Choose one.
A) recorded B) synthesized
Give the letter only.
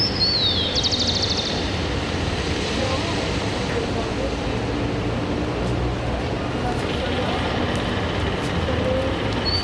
A